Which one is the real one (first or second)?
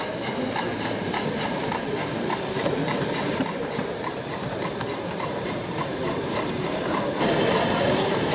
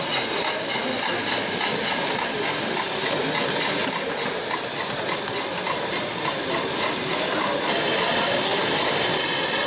second